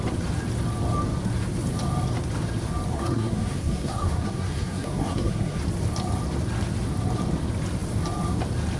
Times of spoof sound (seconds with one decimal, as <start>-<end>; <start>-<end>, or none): 2.9-5.6